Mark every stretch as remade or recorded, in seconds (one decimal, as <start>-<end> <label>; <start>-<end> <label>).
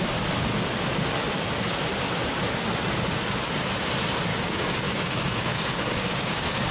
0.0-4.3 recorded; 4.3-6.7 remade